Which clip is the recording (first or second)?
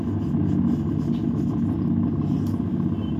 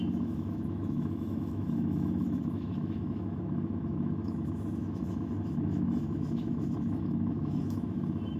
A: first